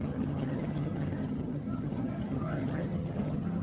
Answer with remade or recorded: remade